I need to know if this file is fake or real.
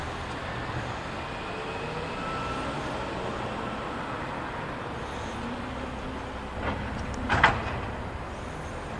real